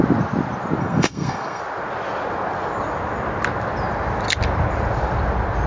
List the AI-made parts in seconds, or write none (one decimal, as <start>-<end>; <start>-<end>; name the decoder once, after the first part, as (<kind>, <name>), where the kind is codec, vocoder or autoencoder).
0.8-1.6 (codec, SNAC)